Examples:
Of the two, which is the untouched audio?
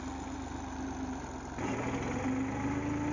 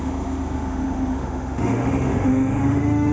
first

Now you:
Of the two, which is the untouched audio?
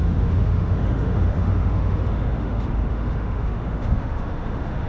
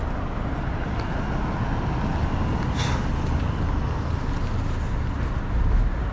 second